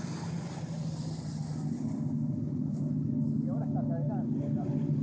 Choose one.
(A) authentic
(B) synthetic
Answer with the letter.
A